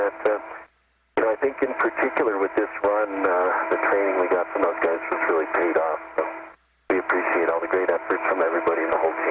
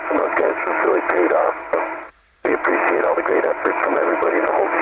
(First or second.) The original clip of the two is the first